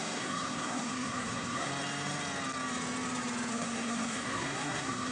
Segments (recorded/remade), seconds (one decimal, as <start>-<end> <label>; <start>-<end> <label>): 0.0-1.7 remade; 1.7-3.5 recorded; 3.5-5.1 remade